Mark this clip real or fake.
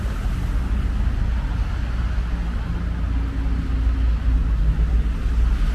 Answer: real